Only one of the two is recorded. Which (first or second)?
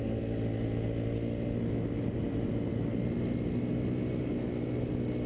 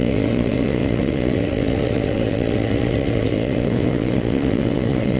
first